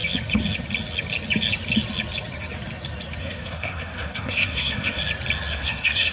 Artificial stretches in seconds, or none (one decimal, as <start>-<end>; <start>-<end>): 3.2-5.0; 5.5-6.1